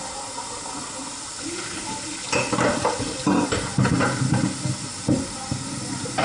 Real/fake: real